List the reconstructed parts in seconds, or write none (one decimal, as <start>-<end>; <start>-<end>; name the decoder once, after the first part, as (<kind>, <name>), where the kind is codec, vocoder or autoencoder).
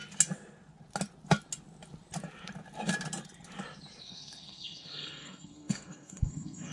4.0-6.7 (codec, SNAC)